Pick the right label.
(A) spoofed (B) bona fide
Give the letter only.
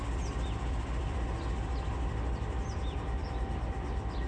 B